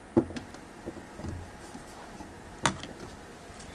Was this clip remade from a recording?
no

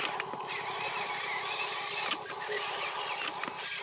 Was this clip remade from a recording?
no